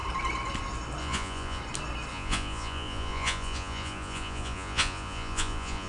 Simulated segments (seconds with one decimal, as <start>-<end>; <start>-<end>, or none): 1.0-1.6; 2.1-5.9

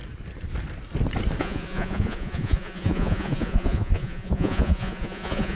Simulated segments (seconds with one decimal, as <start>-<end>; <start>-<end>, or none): 1.4-5.6

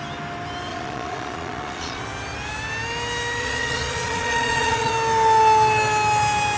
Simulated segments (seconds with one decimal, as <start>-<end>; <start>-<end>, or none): 0.7-2.0; 3.4-4.9

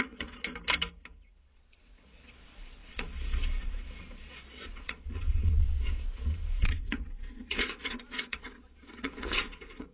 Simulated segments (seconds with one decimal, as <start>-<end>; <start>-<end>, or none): 0.0-0.4; 1.4-9.9

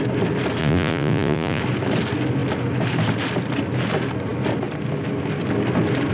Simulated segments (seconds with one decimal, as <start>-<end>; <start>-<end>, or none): 0.6-1.6

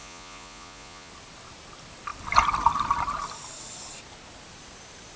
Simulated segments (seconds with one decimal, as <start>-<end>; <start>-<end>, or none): 0.0-1.1

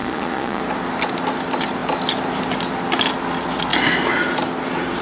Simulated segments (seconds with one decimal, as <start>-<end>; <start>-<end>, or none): 0.0-0.6

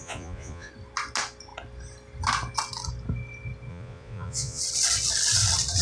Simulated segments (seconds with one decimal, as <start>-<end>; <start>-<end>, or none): 0.0-0.7; 3.7-4.6